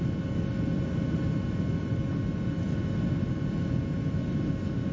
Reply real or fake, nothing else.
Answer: real